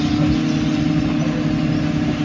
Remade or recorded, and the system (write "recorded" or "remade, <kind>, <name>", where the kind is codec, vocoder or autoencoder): recorded